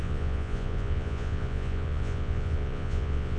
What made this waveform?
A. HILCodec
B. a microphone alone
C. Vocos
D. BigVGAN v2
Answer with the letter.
C